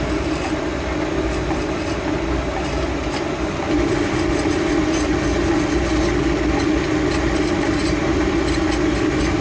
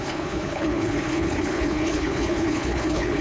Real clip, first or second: first